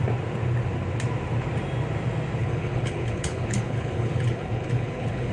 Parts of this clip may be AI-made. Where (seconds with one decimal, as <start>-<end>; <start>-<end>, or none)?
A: 2.4-5.3